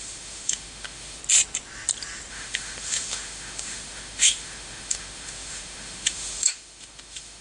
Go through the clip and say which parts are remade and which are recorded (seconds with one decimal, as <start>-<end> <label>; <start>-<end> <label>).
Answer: 0.0-1.2 remade; 1.2-2.3 recorded; 2.3-7.4 remade